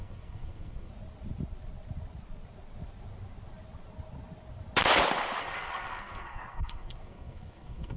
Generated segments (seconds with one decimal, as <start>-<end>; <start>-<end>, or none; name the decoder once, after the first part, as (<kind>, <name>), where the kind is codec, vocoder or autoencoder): 0.0-0.9 (codec, SNAC); 5.4-8.0